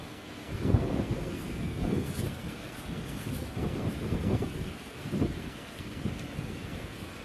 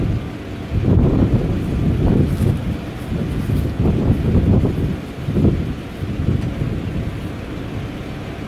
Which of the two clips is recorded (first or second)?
second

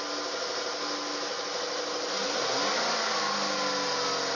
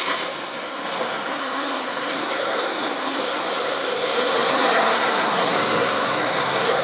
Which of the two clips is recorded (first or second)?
first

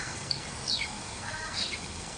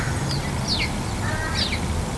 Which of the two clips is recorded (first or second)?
second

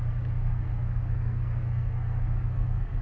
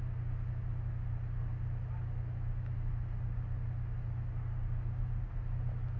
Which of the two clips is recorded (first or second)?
second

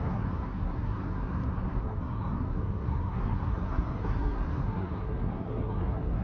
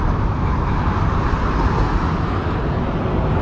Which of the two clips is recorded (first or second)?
second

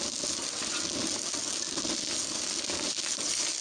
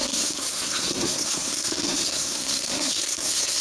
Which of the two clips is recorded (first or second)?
first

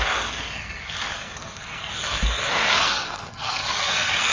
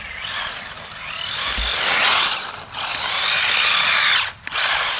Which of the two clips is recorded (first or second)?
second